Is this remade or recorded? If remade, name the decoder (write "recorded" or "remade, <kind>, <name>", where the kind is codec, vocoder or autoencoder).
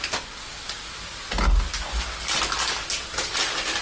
recorded